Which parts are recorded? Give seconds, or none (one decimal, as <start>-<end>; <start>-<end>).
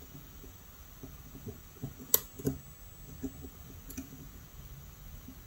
2.1-3.5